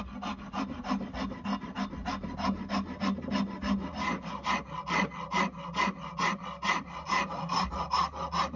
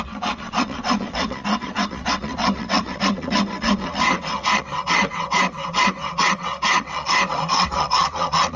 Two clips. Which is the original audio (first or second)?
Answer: first